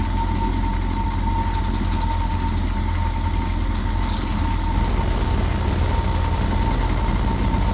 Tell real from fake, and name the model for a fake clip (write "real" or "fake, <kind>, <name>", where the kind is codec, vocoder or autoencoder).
real